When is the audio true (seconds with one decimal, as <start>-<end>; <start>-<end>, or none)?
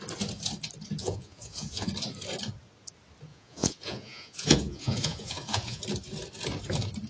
0.0-1.0; 1.9-3.3; 5.8-7.1